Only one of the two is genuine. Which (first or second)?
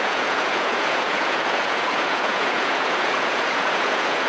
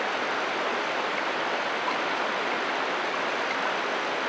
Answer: second